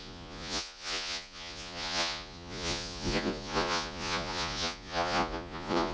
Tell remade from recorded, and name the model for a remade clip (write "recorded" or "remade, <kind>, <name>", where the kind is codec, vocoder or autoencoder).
remade, vocoder, Vocos